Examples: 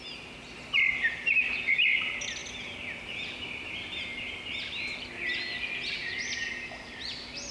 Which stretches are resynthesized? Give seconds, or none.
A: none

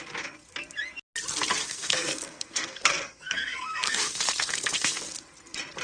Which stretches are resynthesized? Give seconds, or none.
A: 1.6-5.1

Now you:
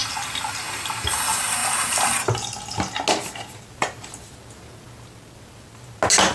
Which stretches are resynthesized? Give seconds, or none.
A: none

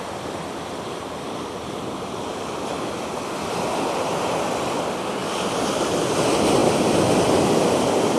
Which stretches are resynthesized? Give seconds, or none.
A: none

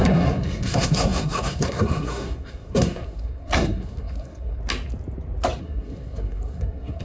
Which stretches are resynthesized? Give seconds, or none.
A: 0.0-4.6; 5.6-7.0